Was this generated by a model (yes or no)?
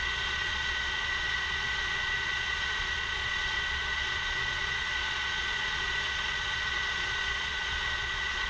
yes